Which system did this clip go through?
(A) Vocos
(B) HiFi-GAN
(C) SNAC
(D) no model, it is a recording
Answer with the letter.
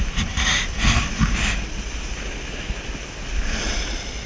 D